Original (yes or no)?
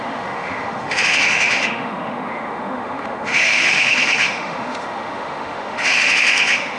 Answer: no